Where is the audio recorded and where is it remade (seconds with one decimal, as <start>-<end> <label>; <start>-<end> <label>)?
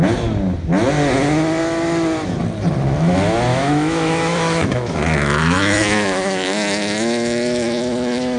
0.0-3.5 recorded; 3.5-8.4 remade